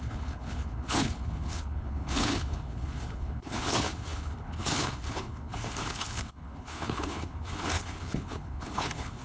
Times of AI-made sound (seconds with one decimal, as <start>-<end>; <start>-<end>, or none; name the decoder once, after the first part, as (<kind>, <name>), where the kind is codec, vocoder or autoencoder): 0.0-9.2 (codec, HILCodec)